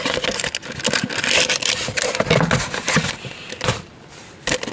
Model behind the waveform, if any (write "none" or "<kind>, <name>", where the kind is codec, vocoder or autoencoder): none